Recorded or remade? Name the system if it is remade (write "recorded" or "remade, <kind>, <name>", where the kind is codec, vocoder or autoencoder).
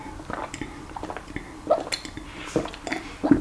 recorded